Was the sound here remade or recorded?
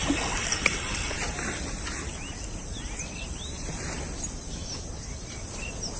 recorded